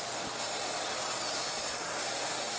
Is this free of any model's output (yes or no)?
yes